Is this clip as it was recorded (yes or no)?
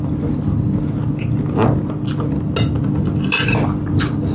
yes